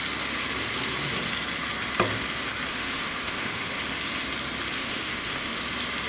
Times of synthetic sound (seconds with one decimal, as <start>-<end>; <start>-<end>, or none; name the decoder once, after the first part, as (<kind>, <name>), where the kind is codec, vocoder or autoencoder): 2.7-3.8 (autoencoder, DAC-VAE); 4.8-5.6